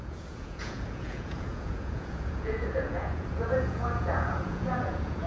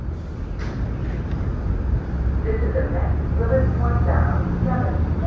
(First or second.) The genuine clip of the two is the second